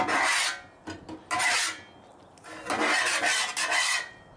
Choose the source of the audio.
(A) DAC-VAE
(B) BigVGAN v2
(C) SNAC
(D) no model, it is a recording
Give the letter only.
D